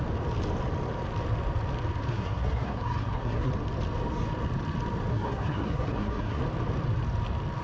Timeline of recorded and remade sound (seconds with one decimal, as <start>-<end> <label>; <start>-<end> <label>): 0.0-2.1 recorded; 2.1-3.5 remade; 3.5-5.1 recorded; 5.1-6.4 remade; 6.4-7.6 recorded